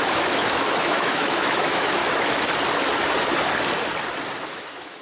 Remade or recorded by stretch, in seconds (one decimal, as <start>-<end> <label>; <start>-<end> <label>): 0.0-2.0 remade; 2.0-4.5 recorded; 4.5-5.0 remade